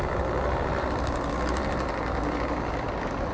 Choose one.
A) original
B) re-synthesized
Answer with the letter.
A